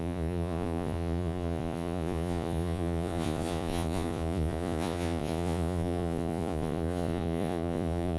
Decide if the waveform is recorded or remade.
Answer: remade